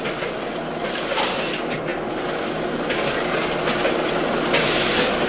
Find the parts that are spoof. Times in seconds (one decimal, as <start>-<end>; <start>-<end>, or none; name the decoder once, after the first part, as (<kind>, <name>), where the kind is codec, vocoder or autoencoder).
none